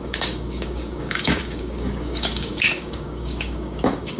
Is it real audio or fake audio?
fake